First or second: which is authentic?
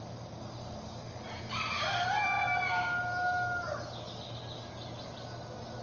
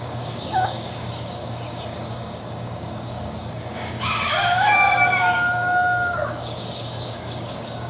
first